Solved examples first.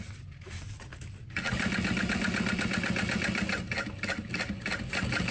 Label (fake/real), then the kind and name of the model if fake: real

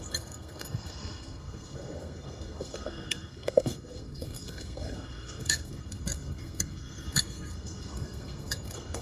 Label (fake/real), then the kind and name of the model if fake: fake, codec, SNAC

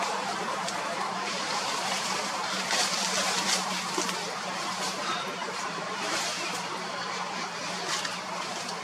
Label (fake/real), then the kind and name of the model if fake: fake, vocoder, BigVGAN v2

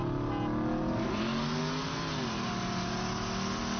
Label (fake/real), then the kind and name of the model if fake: real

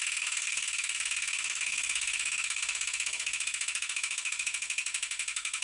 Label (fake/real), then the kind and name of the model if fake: fake, autoencoder, DAC-VAE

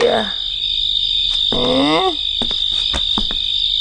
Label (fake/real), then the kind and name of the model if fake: real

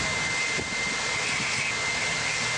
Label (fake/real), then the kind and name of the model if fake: real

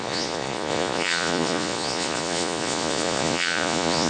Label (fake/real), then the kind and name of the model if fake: fake, vocoder, Vocos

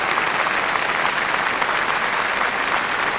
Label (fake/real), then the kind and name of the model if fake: real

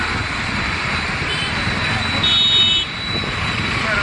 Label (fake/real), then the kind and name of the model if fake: real